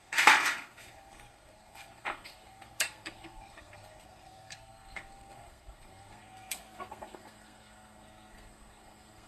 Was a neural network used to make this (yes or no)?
yes